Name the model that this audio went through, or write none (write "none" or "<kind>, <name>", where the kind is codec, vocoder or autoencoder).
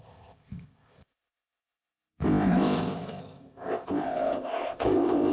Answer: codec, ZipCodec